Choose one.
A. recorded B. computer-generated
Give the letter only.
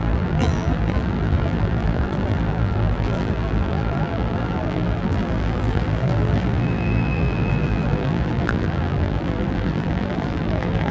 B